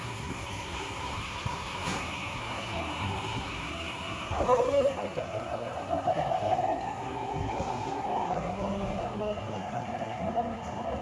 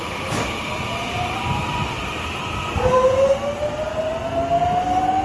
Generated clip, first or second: first